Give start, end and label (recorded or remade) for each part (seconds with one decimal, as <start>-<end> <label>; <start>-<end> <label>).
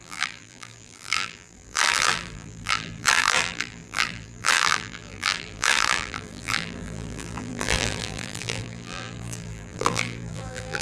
0.0-10.8 remade